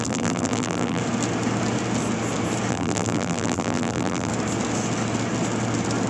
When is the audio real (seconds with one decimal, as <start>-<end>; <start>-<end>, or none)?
1.0-2.7; 4.3-6.1